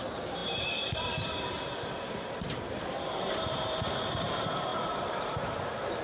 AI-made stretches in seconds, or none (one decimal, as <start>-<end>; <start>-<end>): 0.0-6.0